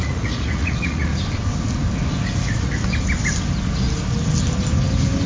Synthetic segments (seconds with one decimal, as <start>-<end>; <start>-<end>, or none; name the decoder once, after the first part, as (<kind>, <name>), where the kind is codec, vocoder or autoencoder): 0.0-1.1 (vocoder, Vocos); 2.2-2.8